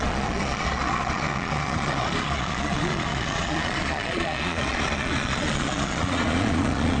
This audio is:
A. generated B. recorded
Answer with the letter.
A